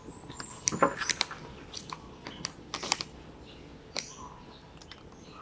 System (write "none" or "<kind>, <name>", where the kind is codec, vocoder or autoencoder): none